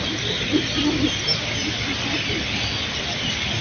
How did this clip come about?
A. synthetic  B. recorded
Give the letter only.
B